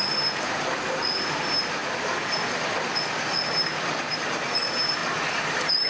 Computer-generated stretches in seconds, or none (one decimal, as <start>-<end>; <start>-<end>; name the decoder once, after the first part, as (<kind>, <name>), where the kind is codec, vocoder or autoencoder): none